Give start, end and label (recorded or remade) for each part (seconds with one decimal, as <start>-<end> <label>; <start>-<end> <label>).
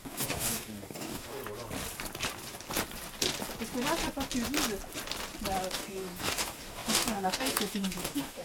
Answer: 0.0-1.4 remade; 1.4-5.7 recorded; 5.7-8.4 remade